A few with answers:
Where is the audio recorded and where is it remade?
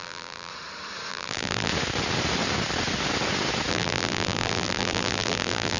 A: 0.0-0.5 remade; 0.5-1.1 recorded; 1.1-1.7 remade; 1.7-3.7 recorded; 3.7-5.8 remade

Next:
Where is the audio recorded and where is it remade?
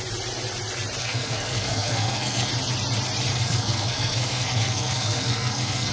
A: 0.0-1.0 recorded; 1.0-2.5 remade; 2.5-3.3 recorded; 3.3-5.9 remade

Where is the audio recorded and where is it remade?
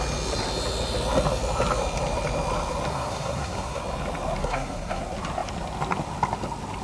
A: 0.0-2.9 recorded; 2.9-3.8 remade; 3.8-4.4 recorded; 4.4-5.0 remade; 5.0-6.8 recorded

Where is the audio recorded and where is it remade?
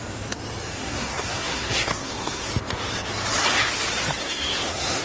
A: 0.0-0.7 recorded; 0.7-2.5 remade; 2.5-4.2 recorded; 4.2-5.0 remade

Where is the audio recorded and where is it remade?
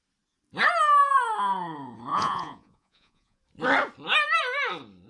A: 0.0-2.1 recorded; 2.1-3.4 remade; 3.4-5.1 recorded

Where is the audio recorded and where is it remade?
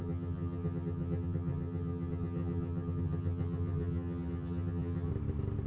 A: 0.0-5.1 remade; 5.1-5.7 recorded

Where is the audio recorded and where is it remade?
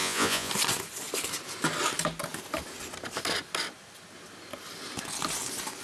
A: 0.0-0.5 remade; 0.5-5.8 recorded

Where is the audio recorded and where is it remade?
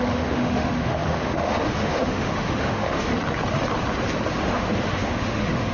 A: 0.0-3.1 remade; 3.1-4.4 recorded; 4.4-5.7 remade